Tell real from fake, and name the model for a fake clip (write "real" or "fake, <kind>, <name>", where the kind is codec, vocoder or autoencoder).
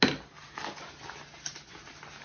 real